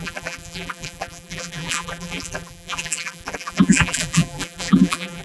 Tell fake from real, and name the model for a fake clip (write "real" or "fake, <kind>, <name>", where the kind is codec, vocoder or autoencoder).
fake, vocoder, BigVGAN v2